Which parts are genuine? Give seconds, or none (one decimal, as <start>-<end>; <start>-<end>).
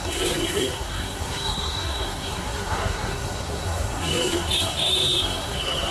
none